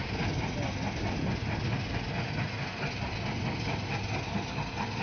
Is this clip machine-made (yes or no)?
no